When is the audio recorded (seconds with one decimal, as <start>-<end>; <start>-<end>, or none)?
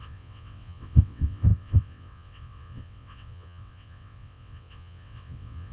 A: none